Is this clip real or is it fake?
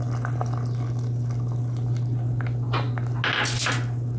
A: real